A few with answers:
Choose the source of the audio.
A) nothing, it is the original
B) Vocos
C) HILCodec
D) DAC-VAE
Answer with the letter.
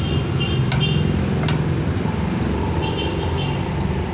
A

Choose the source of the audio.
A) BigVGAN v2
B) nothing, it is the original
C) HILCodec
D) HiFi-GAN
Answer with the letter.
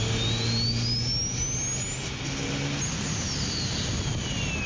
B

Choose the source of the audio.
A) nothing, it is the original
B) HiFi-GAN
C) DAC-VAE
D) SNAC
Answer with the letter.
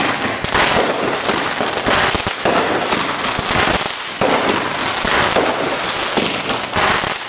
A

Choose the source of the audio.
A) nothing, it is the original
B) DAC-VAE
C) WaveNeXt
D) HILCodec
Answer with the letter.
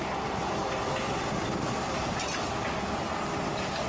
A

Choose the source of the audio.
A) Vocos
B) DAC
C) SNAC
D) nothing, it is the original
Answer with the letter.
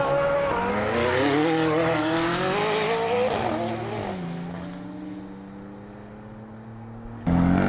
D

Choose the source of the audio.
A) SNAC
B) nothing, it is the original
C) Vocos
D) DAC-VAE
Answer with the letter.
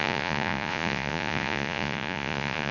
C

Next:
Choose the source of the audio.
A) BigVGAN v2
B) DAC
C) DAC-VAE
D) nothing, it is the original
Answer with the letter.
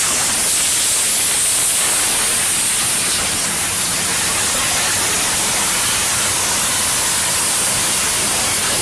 D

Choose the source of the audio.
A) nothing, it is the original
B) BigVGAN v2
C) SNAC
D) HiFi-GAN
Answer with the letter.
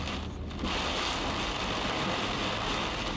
A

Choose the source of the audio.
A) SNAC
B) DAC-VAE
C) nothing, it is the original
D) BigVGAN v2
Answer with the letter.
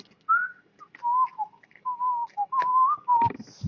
C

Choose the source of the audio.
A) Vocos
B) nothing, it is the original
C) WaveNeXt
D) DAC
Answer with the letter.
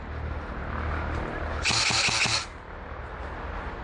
B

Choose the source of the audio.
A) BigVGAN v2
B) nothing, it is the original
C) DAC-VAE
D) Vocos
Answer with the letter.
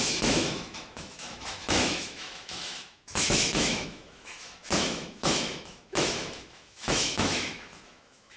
C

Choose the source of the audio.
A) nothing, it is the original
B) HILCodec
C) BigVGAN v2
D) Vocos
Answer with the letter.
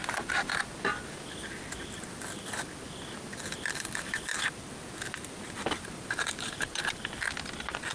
A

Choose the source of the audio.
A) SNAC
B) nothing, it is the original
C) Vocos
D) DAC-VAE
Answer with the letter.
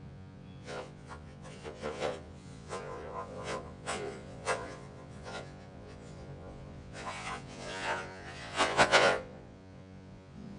C